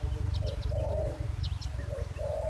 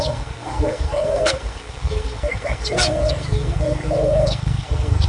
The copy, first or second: second